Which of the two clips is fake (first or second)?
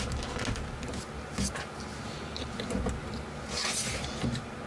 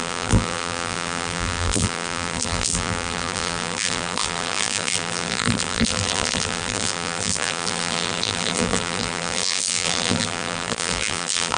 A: second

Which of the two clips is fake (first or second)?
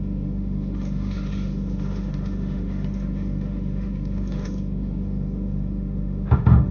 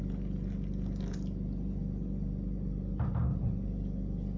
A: first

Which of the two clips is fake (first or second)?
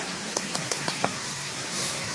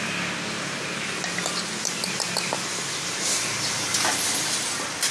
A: first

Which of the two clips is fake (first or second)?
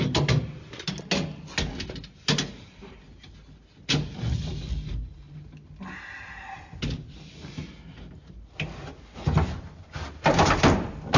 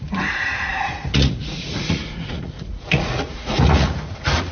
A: second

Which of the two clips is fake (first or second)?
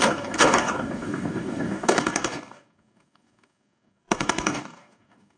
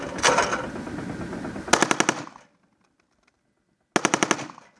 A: first